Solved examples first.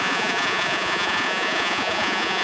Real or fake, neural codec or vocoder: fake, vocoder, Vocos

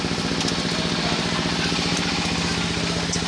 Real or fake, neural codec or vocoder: real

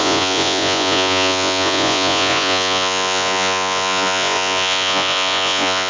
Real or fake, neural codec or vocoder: fake, vocoder, Vocos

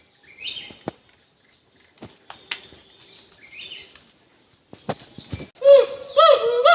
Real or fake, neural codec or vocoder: real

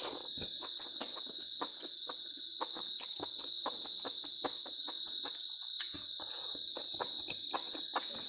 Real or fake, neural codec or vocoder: real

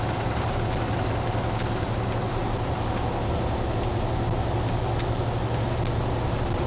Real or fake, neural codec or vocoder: real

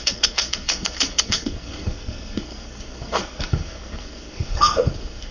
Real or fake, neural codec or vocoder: fake, codec, SNAC